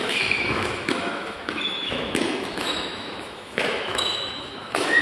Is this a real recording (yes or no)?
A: no